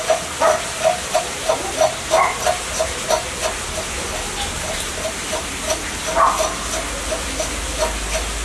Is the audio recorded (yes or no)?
yes